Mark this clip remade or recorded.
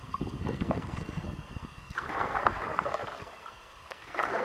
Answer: remade